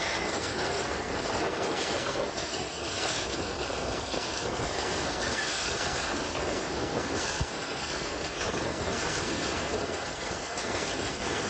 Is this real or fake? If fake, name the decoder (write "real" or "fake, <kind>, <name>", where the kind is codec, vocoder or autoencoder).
fake, codec, SNAC